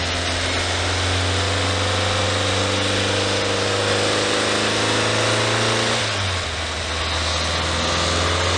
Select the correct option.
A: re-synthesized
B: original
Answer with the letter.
B